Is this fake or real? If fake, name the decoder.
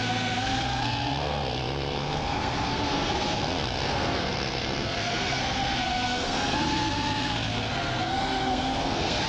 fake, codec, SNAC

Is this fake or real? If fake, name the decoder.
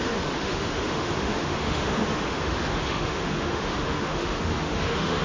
fake, autoencoder, DAC-VAE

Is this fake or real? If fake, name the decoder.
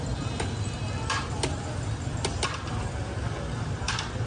real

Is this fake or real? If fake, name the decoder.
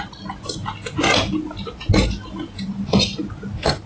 real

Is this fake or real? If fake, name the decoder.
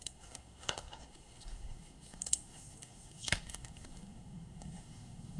fake, codec, SNAC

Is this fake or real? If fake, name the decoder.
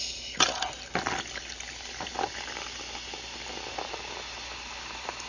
real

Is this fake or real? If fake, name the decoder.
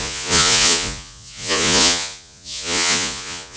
fake, vocoder, Vocos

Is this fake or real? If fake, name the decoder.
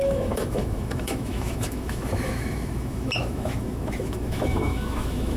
fake, autoencoder, DAC-VAE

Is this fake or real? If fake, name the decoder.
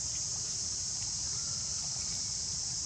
fake, vocoder, BigVGAN v2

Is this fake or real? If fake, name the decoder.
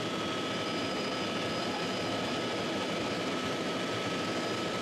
fake, vocoder, BigVGAN v2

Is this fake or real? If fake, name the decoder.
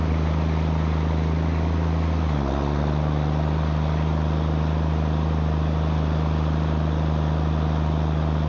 real